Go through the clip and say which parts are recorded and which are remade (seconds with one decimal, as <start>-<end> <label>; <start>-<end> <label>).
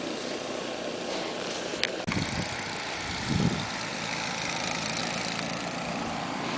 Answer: 0.0-1.7 remade; 1.7-3.5 recorded; 3.5-6.6 remade